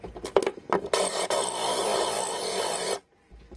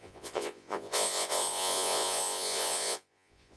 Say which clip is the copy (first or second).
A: second